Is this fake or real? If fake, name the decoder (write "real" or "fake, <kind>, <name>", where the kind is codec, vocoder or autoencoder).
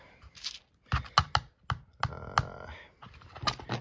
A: real